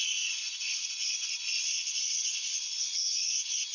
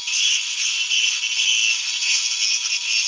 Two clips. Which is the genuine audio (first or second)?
second